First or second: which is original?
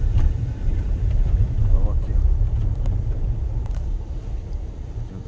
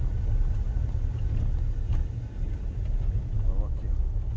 second